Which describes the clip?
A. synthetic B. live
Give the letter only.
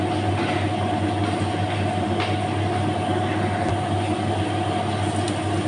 B